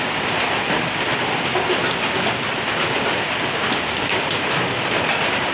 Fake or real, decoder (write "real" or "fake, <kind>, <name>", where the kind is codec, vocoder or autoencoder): real